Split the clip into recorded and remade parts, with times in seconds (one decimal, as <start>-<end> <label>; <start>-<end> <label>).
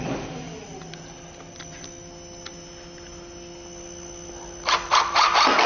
0.0-5.7 recorded